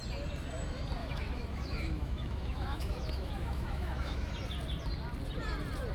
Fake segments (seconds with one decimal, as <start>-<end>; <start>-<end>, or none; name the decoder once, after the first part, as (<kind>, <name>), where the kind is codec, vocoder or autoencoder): 1.0-4.3 (autoencoder, DAC-VAE)